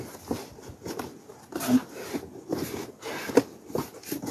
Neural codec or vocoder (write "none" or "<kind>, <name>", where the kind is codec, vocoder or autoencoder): none